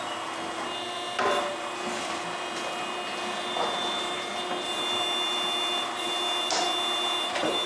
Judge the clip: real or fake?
real